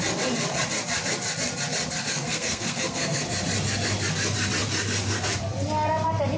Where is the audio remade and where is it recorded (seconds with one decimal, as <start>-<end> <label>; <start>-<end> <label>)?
0.0-2.1 recorded; 2.1-3.2 remade; 3.2-6.4 recorded